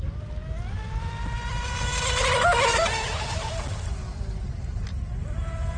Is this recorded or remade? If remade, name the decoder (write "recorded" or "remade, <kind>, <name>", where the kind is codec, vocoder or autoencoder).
recorded